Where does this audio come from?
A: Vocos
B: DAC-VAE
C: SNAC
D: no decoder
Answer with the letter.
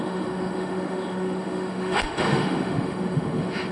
B